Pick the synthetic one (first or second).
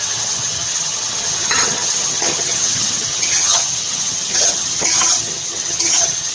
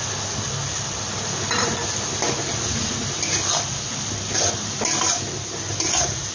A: first